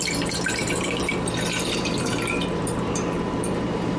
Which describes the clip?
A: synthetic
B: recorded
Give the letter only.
A